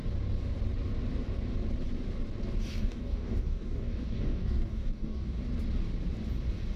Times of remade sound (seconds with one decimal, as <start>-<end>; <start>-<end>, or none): 2.7-5.4